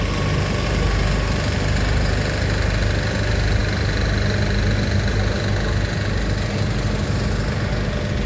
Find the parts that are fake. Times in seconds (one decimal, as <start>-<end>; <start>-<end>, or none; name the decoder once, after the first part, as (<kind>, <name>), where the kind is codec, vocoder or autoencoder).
none